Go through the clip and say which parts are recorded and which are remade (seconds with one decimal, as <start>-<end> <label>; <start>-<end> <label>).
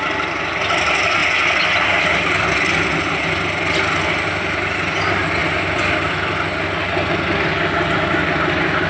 0.0-8.9 recorded